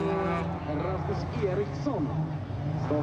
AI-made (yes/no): no